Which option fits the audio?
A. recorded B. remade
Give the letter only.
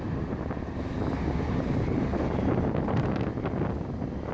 A